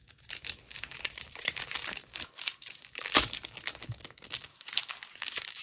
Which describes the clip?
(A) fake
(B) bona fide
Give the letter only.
A